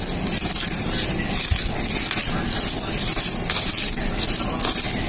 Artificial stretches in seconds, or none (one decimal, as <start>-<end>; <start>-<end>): none